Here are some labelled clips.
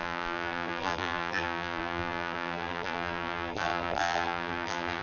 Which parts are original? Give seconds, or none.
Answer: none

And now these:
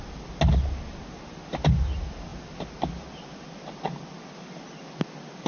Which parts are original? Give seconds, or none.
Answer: 0.0-5.5